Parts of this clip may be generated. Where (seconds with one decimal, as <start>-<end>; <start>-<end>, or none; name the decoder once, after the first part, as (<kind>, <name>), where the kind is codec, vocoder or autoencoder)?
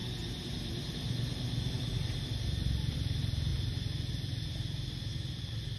0.8-3.5 (vocoder, BigVGAN v2); 4.1-5.8